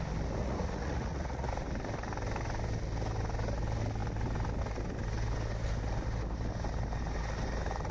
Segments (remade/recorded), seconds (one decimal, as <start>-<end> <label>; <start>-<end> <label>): 0.0-0.4 recorded; 0.4-1.5 remade; 1.5-7.9 recorded